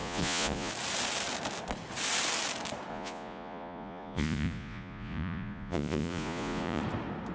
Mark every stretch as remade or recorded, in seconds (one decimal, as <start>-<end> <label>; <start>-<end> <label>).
0.0-0.7 remade; 0.7-2.9 recorded; 2.9-6.8 remade; 6.8-7.3 recorded